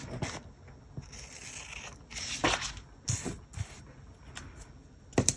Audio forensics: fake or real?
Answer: real